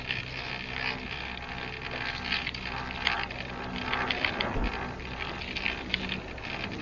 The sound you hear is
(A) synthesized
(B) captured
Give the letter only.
B